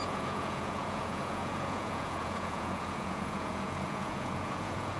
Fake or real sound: fake